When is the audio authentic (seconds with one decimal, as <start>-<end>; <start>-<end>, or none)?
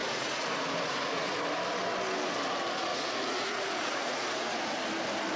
1.4-2.9; 4.6-5.4